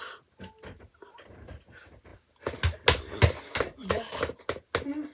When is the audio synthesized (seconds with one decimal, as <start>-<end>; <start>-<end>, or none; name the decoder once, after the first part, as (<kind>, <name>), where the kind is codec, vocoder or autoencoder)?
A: none